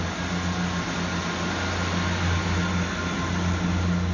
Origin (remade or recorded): recorded